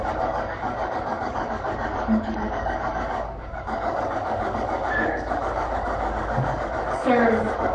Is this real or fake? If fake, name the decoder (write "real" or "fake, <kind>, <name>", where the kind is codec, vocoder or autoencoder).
fake, codec, DAC